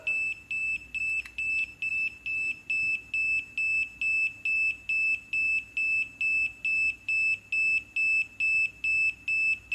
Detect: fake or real real